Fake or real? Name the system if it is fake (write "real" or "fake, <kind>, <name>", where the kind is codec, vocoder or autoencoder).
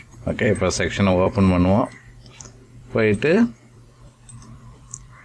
fake, vocoder, BigVGAN v2